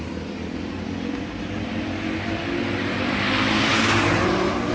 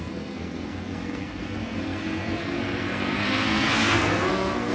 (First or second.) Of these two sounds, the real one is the first